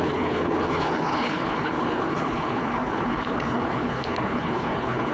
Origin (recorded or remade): remade